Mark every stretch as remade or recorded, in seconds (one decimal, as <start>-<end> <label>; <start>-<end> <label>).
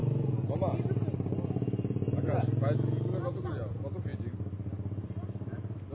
0.0-5.9 recorded